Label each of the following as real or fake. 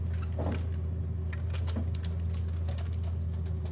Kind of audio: real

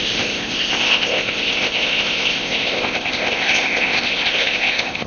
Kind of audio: fake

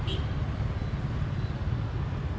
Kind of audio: real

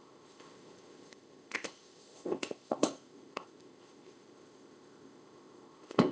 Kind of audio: fake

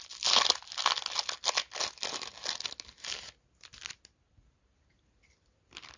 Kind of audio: real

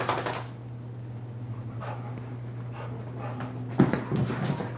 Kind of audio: real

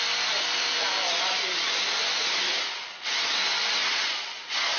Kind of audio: real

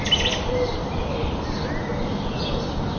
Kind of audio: real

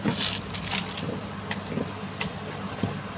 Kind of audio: real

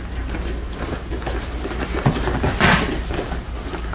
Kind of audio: real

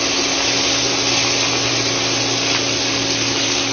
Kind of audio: real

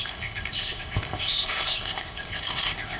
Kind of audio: fake